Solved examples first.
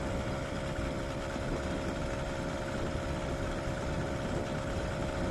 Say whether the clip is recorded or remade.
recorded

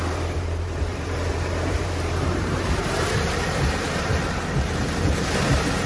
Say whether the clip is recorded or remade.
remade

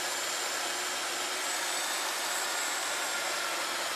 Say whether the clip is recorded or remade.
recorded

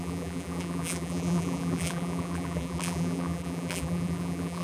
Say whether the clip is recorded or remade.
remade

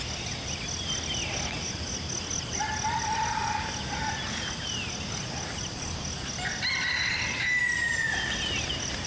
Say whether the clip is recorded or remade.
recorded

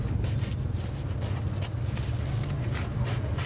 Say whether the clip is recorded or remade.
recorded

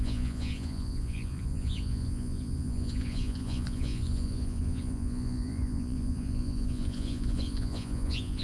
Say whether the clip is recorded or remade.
remade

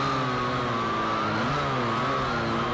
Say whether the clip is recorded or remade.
recorded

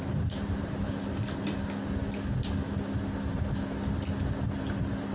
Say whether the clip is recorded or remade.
recorded